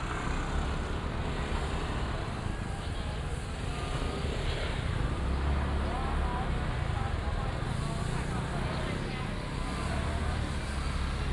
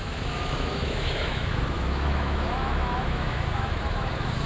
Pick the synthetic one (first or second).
second